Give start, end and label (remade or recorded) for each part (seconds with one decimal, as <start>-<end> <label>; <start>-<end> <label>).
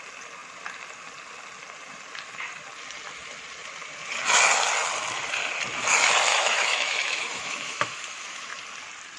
0.0-6.3 recorded; 6.3-8.6 remade; 8.6-9.2 recorded